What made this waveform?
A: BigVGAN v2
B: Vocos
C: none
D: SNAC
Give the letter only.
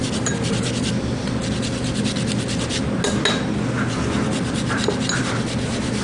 C